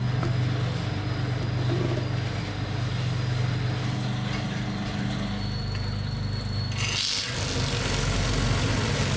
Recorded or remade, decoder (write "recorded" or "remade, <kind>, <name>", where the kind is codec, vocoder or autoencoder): recorded